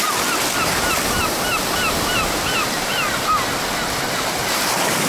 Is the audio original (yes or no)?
yes